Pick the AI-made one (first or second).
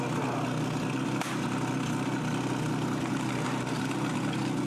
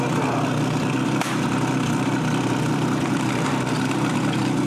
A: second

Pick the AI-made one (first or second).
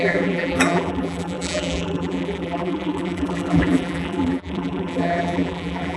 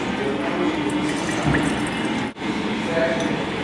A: first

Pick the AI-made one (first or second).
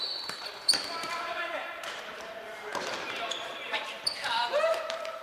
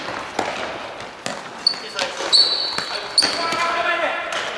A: first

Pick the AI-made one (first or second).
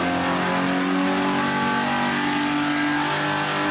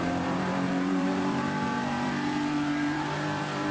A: second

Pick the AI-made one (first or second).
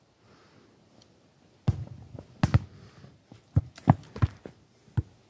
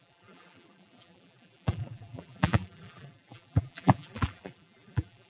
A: second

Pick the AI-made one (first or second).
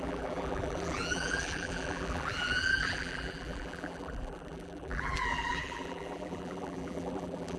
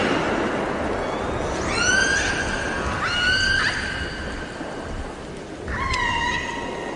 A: first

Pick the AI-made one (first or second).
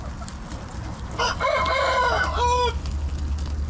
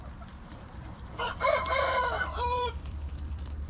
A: second